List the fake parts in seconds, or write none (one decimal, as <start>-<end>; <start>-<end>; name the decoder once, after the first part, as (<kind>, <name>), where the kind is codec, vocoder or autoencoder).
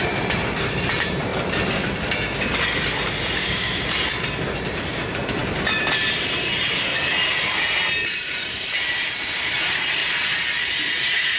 0.0-1.3 (vocoder, BigVGAN v2); 3.1-10.0; 10.9-11.4